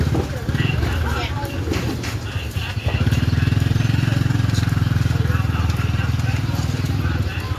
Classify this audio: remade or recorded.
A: recorded